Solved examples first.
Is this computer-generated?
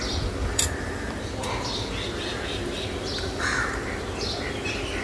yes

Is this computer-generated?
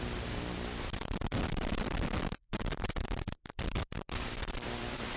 yes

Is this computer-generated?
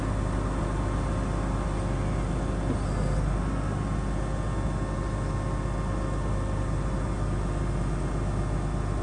no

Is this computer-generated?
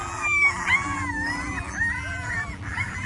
yes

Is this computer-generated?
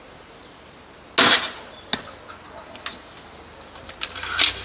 no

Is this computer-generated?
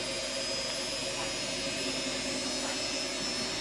no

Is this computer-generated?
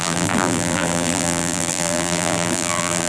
yes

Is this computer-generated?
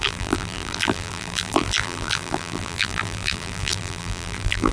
yes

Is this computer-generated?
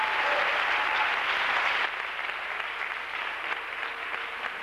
no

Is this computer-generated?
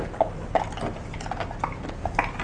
no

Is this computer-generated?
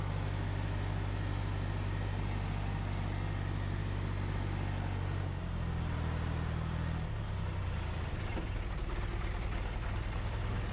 no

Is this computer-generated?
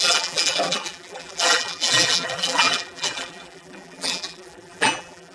yes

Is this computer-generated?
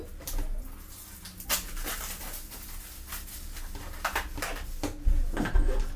no